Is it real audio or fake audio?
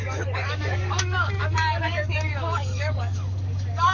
fake